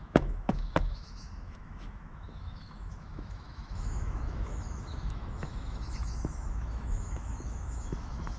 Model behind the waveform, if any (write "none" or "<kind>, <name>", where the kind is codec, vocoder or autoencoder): autoencoder, DAC-VAE